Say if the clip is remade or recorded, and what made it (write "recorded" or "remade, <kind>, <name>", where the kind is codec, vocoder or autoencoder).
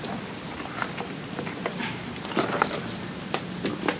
recorded